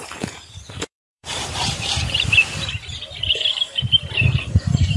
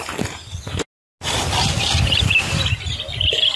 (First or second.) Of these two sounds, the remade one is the first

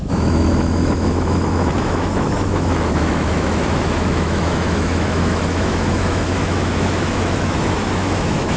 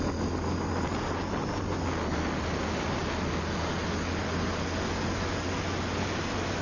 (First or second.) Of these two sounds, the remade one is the first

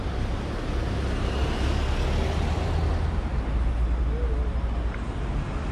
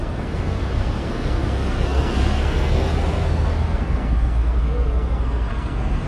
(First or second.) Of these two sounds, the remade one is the second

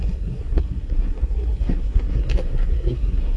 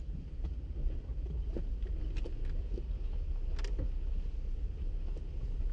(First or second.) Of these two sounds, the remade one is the first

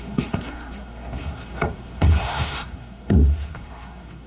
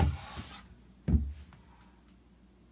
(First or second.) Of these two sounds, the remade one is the first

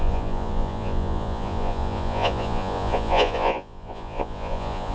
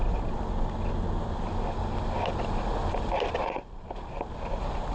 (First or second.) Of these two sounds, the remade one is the first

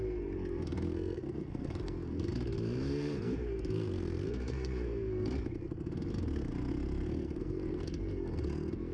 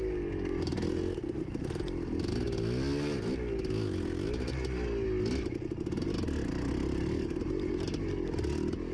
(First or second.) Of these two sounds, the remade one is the first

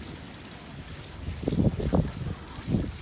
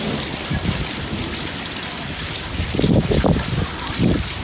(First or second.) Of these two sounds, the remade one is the second